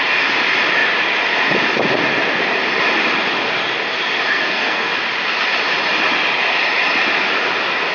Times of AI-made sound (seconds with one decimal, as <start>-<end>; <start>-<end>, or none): 4.3-4.9